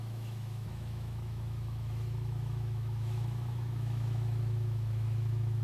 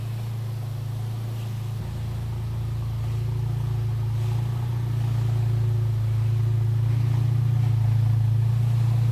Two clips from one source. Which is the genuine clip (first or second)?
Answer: second